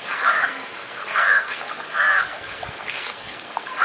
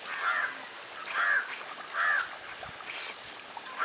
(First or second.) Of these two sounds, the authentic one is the second